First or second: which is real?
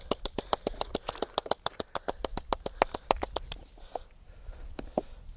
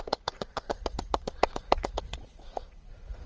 first